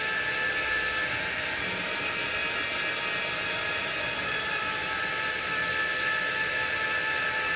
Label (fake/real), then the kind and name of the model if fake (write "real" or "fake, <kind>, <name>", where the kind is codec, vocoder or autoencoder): real